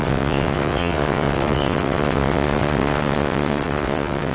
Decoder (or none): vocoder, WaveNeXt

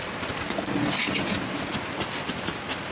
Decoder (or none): none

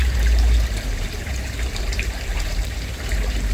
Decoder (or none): vocoder, BigVGAN v2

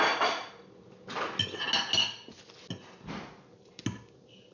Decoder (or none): none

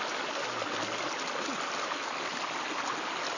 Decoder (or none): none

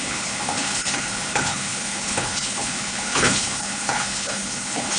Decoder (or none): codec, HILCodec